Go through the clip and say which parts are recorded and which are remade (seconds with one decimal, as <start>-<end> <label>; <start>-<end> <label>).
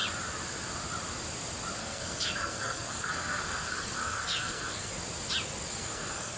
0.0-1.8 recorded; 1.8-4.9 remade; 4.9-5.7 recorded; 5.7-6.4 remade